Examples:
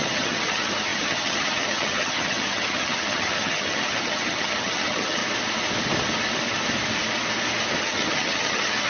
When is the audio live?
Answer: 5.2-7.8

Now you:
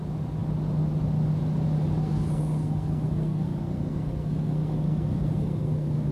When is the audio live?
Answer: 0.0-2.0

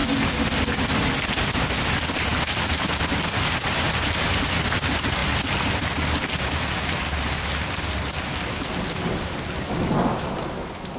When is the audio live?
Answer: 0.0-2.3; 2.9-11.0

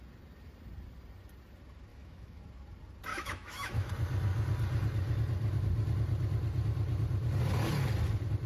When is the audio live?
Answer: 0.0-1.9; 2.4-3.1; 3.9-8.5

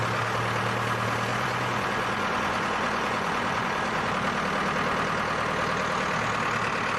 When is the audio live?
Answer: 0.0-1.3; 4.1-7.0